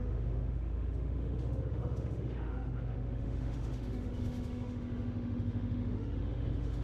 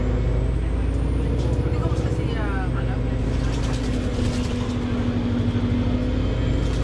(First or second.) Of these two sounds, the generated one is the first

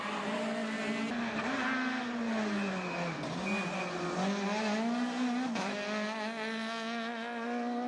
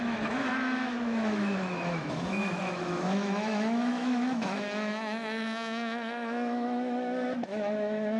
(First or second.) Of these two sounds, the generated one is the second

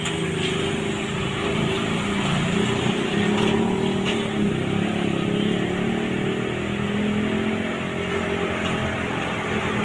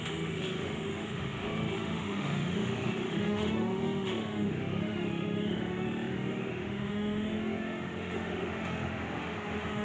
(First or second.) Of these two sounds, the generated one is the second